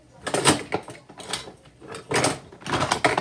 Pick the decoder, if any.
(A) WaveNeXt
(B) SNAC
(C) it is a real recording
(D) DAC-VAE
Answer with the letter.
C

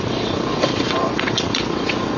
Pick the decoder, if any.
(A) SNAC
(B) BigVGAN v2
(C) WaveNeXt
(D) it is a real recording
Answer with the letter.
C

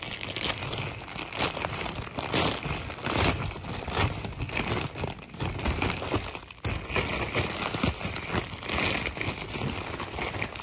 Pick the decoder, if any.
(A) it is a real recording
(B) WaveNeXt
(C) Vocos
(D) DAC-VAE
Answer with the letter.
A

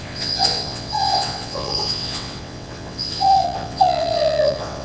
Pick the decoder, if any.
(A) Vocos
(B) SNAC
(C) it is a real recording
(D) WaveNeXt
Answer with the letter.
D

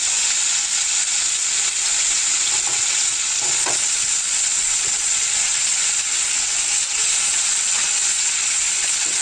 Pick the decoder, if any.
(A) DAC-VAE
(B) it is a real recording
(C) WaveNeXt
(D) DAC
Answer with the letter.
C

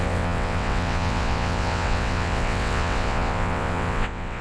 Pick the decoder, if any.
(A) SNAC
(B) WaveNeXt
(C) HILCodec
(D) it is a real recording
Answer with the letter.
B